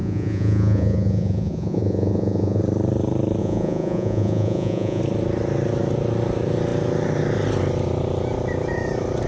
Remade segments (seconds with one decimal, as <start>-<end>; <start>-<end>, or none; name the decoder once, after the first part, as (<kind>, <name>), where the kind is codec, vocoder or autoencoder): 0.0-2.6 (vocoder, Vocos); 3.4-5.0